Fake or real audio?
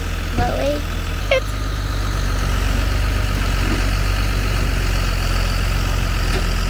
real